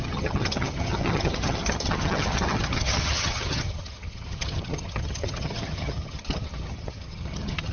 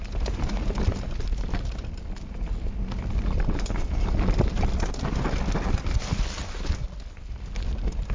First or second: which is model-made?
first